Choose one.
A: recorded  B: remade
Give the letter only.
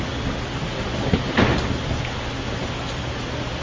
A